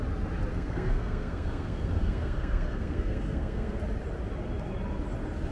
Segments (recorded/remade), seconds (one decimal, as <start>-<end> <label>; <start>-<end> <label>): 0.0-0.5 recorded; 0.5-3.8 remade; 3.8-5.5 recorded